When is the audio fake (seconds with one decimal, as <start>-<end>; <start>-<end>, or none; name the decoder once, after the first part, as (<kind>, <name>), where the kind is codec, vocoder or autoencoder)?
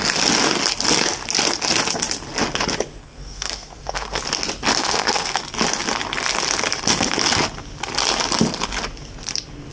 3.0-4.2 (codec, SNAC); 4.8-5.4